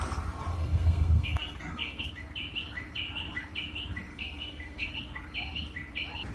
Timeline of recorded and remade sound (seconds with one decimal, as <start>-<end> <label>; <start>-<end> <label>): 0.0-0.5 recorded; 0.5-2.1 remade; 2.1-4.1 recorded; 4.1-4.9 remade; 4.9-6.3 recorded